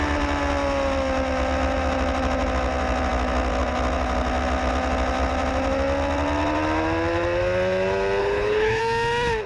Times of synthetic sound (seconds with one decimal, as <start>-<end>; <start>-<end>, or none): 8.2-8.8

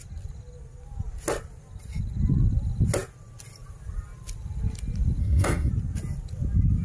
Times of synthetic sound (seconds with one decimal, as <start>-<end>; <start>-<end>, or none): 5.2-5.7

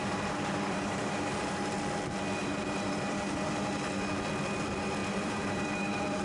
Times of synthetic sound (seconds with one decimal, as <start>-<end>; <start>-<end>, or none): 0.0-1.7; 2.4-3.7; 5.0-6.2

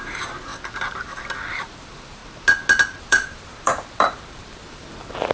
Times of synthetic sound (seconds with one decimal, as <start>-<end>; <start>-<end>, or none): 0.0-0.5; 1.5-2.2; 3.0-5.3

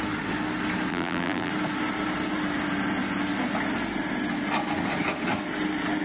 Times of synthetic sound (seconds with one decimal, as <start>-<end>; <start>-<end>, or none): 0.9-1.5

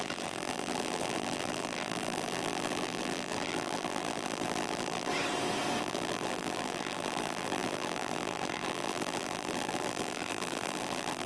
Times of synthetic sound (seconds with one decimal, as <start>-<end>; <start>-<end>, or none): 0.0-5.1; 5.8-11.3

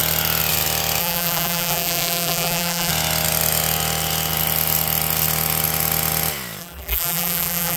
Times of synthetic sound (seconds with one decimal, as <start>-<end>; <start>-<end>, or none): 1.0-2.9; 6.6-7.8

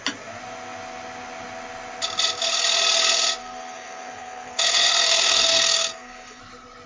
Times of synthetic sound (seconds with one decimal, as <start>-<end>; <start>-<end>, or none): 3.4-6.4